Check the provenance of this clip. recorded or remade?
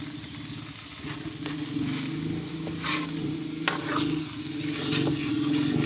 recorded